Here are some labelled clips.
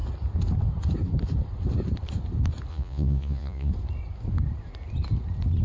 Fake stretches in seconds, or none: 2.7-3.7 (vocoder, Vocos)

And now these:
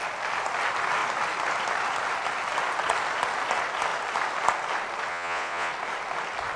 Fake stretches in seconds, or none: 5.1-5.7 (vocoder, Vocos)

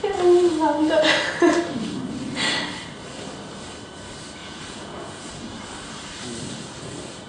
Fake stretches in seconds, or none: 4.4-5.3 (vocoder, Vocos)

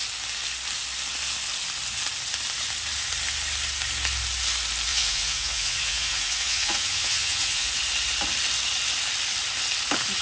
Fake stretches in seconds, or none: 4.9-7.7 (vocoder, Vocos)

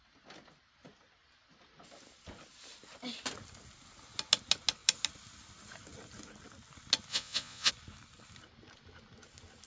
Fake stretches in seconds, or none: 7.1-7.7 (vocoder, Vocos)

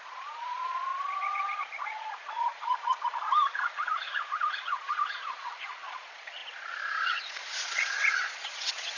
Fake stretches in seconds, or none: 0.0-9.0 (vocoder, Vocos)

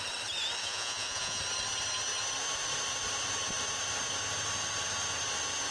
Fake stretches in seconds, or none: 0.6-1.4 (vocoder, Vocos)